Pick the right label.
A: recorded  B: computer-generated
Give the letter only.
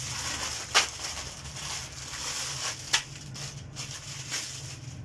A